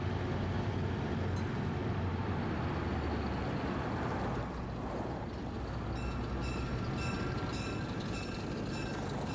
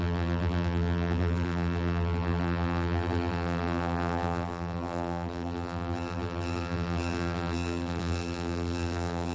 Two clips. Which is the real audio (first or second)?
first